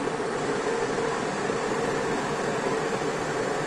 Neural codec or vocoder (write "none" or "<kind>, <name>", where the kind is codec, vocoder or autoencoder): none